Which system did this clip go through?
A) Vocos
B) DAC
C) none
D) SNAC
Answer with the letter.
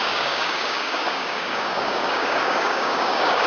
B